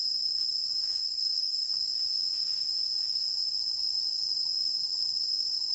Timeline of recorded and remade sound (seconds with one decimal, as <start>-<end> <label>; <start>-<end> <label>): 0.0-1.0 recorded; 1.0-1.7 remade; 1.7-5.7 recorded